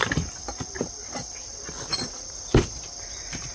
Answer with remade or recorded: recorded